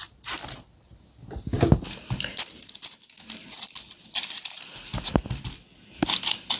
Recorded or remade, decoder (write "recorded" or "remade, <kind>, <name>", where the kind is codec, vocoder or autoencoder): recorded